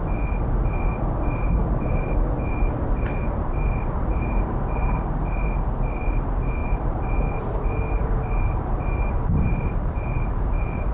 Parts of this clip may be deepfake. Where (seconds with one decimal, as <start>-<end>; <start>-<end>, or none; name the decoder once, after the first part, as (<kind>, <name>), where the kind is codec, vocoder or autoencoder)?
1.6-5.2 (vocoder, BigVGAN v2); 6.6-10.9